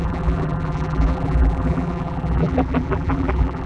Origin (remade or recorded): remade